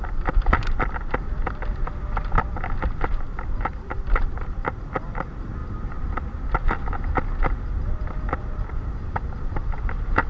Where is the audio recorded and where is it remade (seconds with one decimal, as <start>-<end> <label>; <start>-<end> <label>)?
0.0-5.6 remade; 5.6-7.8 recorded; 7.8-10.3 remade